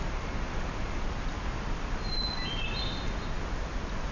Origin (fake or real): real